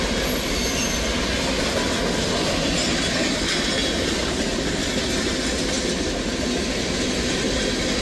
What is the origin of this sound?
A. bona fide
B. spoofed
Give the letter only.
A